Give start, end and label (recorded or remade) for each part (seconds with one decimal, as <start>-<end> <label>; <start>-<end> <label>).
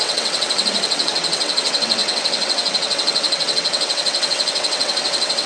0.0-5.5 remade